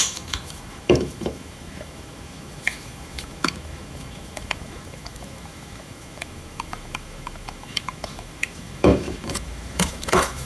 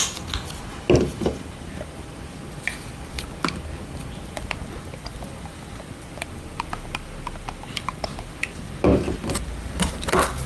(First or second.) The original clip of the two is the second